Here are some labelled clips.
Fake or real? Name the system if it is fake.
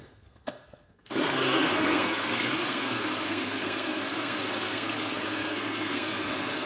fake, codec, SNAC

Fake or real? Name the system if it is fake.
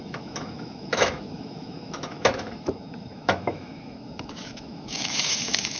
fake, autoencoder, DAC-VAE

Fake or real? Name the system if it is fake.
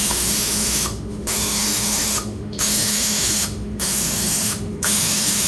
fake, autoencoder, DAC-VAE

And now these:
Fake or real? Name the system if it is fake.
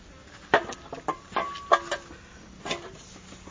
real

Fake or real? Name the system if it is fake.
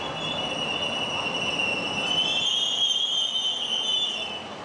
real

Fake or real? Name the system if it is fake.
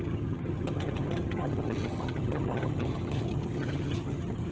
fake, vocoder, HiFi-GAN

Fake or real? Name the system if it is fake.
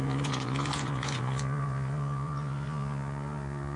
fake, vocoder, Vocos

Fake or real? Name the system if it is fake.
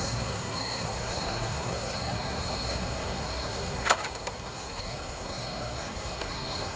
fake, codec, SNAC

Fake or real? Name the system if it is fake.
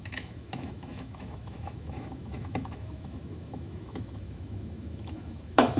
fake, autoencoder, DAC-VAE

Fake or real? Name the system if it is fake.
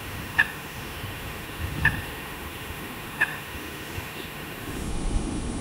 fake, autoencoder, DAC-VAE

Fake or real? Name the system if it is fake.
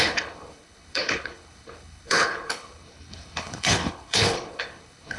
fake, codec, HILCodec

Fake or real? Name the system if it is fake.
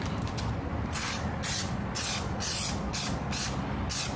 real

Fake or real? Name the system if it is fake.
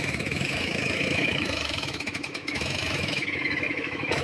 fake, autoencoder, DAC-VAE